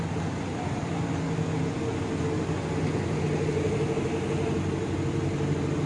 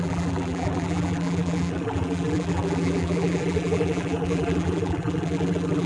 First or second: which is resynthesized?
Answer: second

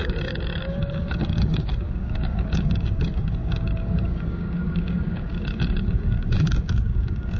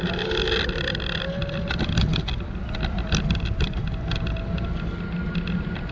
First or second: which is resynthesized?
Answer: first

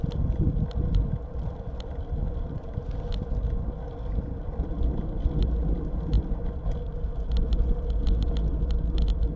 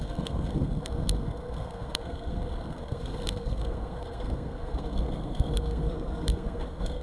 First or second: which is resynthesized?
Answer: second